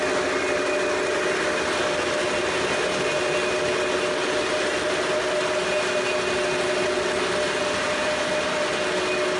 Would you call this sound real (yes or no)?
yes